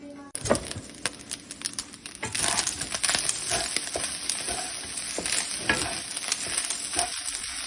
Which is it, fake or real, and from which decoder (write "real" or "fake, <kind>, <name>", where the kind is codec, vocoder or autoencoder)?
real